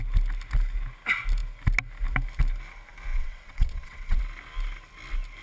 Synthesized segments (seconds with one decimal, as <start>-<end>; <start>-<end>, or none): 3.1-4.2